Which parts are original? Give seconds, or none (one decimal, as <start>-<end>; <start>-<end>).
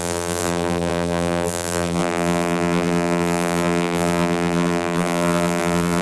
none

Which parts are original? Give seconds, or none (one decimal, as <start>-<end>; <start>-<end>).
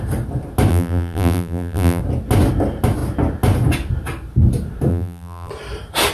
0.0-0.7; 2.0-4.9; 5.5-6.1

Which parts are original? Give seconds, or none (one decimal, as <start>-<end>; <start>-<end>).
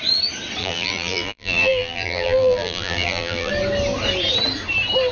0.0-0.6; 3.5-5.1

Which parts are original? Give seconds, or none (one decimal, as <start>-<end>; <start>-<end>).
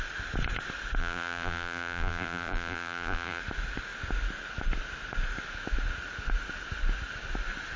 0.0-1.0; 3.4-7.8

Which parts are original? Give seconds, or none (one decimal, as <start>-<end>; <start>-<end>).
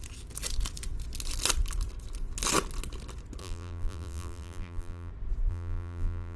0.0-3.4; 5.1-5.5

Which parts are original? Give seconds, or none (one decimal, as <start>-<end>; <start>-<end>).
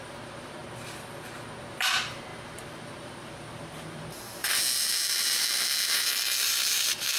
0.6-1.7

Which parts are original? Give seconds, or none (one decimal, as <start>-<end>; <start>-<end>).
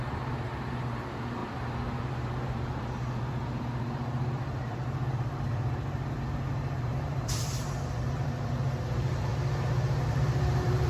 1.4-2.0; 9.3-10.0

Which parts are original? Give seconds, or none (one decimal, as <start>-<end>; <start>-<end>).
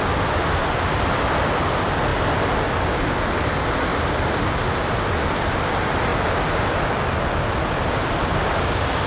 0.0-3.9; 4.6-9.1